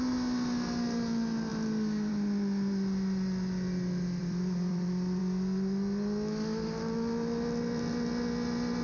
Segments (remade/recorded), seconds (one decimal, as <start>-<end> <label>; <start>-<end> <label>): 0.0-4.2 recorded; 4.2-5.2 remade; 5.2-8.8 recorded